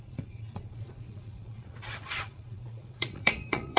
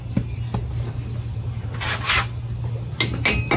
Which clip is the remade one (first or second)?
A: first